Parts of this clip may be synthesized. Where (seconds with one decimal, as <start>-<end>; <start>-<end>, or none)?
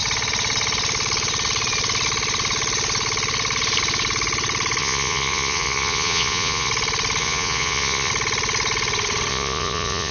4.8-6.7; 7.2-8.1; 9.3-10.1